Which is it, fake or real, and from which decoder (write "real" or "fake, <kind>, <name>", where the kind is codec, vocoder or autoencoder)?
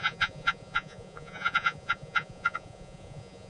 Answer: fake, vocoder, Vocos